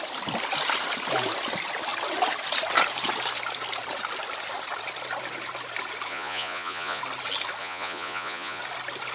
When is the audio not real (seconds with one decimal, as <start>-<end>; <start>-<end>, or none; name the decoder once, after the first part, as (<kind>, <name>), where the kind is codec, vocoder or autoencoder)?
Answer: 6.1-7.0 (vocoder, Vocos); 7.6-8.6